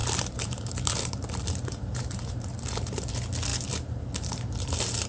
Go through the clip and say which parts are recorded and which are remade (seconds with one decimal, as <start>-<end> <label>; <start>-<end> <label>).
0.0-3.1 remade; 3.1-3.5 recorded; 3.5-5.1 remade